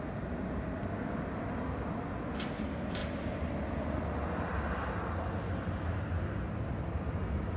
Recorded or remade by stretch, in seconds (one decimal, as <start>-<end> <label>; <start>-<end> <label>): 0.0-7.6 recorded